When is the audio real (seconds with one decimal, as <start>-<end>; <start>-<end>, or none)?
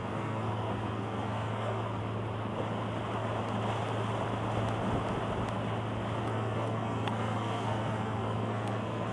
2.0-6.2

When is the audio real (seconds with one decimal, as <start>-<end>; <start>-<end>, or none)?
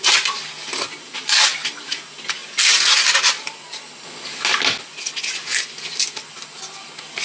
0.0-7.2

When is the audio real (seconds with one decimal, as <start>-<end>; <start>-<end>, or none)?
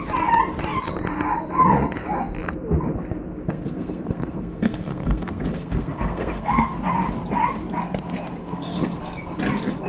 0.0-3.4; 6.8-8.4; 9.0-9.9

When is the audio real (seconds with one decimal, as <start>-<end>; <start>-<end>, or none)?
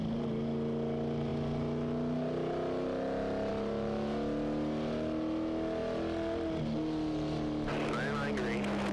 0.0-8.9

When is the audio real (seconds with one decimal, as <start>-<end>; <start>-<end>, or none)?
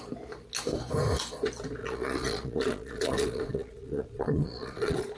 0.0-1.8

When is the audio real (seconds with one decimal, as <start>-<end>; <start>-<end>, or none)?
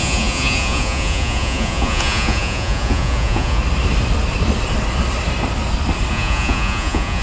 3.6-6.1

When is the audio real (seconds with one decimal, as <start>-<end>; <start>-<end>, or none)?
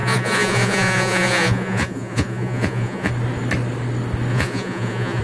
3.1-4.3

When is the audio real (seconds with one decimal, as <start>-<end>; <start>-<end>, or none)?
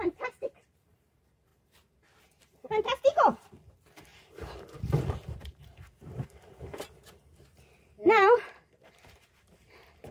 none